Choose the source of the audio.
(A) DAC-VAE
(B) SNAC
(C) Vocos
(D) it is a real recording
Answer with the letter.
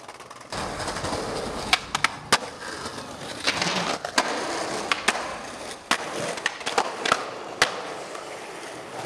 D